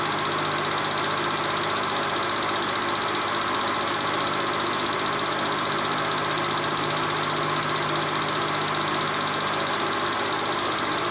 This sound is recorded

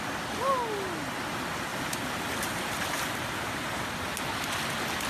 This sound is recorded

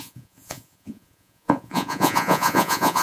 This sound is remade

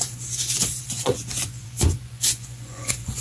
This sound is remade